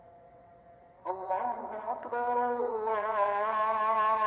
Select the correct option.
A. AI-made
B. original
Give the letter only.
A